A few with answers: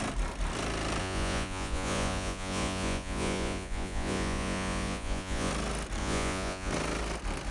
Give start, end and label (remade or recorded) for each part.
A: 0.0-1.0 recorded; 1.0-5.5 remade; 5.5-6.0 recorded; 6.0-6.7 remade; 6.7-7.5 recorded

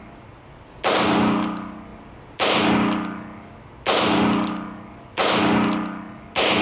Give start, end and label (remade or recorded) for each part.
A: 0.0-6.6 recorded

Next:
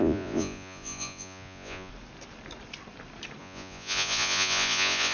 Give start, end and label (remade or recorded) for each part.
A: 0.0-1.9 remade; 1.9-3.4 recorded; 3.4-5.1 remade

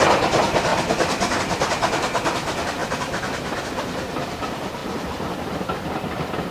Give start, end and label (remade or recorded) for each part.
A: 0.0-2.8 remade; 2.8-3.6 recorded; 3.6-6.5 remade

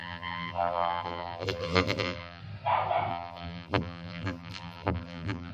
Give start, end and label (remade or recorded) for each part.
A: 0.0-2.4 remade; 2.4-3.1 recorded; 3.1-5.5 remade

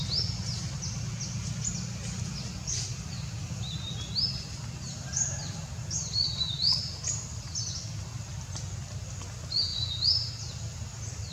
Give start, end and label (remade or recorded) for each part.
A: 0.0-9.7 recorded; 9.7-10.3 remade; 10.3-11.3 recorded

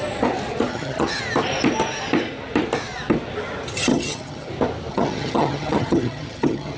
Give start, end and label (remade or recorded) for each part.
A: 0.0-0.7 recorded; 0.7-1.2 remade; 1.2-3.9 recorded; 3.9-4.5 remade; 4.5-4.9 recorded; 4.9-6.8 remade